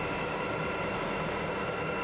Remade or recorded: recorded